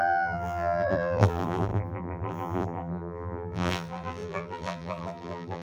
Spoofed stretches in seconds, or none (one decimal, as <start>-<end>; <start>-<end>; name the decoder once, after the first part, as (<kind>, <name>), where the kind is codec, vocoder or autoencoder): 0.0-5.6 (vocoder, BigVGAN v2)